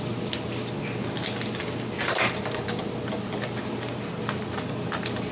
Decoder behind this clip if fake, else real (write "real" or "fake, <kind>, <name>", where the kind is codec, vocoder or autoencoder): real